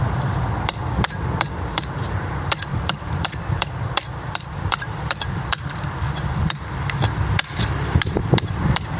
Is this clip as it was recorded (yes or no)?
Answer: no